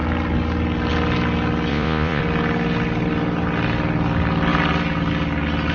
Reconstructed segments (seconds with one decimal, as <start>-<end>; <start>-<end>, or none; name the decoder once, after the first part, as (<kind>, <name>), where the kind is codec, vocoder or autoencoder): 1.7-2.2 (vocoder, Vocos)